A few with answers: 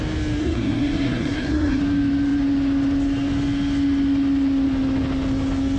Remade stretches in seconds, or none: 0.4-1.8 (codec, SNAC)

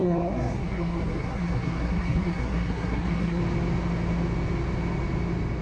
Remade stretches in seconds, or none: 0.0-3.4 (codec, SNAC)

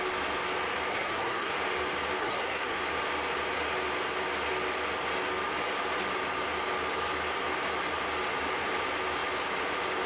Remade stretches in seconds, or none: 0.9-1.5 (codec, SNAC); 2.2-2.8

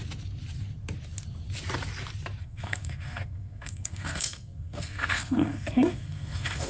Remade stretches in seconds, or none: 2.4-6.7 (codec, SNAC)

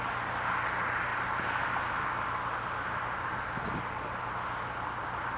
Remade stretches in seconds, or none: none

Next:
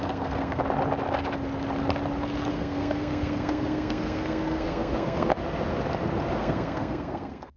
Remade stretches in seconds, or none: 0.0-0.6 (codec, SNAC); 2.5-5.3; 6.4-7.6

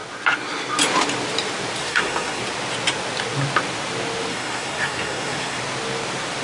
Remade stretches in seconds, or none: 1.8-2.4 (codec, SNAC); 4.3-5.6